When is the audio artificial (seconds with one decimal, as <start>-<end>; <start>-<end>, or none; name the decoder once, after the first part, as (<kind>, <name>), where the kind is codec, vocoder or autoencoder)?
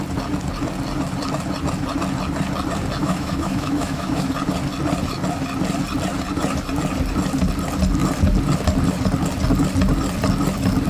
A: 3.0-4.3 (autoencoder, DAC-VAE)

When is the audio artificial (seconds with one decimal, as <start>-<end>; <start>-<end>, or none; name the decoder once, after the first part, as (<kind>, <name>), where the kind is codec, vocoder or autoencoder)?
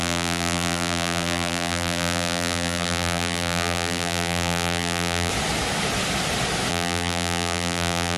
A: 0.0-5.3 (vocoder, BigVGAN v2); 6.7-8.2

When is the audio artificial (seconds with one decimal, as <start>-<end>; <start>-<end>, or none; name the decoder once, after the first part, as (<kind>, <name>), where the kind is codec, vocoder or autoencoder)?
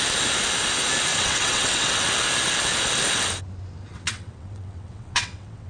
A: 1.1-2.0 (vocoder, WaveNeXt); 3.9-5.7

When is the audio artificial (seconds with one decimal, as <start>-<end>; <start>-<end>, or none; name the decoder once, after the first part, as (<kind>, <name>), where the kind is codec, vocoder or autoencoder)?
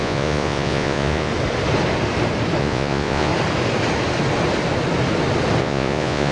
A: 0.0-1.3 (vocoder, Vocos); 2.6-3.3; 5.6-6.3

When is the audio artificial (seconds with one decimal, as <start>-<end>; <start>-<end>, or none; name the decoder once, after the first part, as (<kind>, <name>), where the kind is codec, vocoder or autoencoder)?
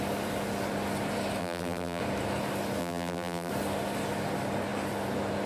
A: 1.4-2.0 (vocoder, BigVGAN v2); 2.8-3.5